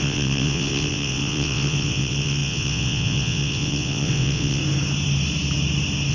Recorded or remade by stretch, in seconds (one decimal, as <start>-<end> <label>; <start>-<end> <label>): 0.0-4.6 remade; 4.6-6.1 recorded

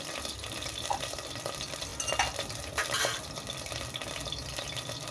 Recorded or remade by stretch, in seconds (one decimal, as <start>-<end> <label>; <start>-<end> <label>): 0.0-5.1 recorded

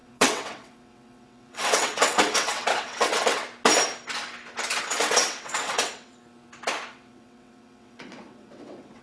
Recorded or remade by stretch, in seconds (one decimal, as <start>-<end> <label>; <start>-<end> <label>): 0.0-3.4 remade; 3.4-4.8 recorded; 4.8-6.2 remade; 6.2-6.9 recorded; 6.9-9.0 remade

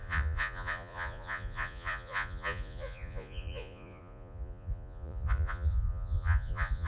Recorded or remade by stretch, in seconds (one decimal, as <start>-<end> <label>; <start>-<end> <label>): 0.0-6.9 remade

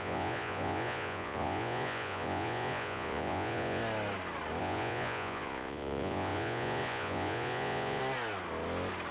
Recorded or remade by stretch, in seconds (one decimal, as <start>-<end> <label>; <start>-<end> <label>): 0.0-3.8 remade; 3.8-4.6 recorded; 4.6-8.0 remade; 8.0-9.1 recorded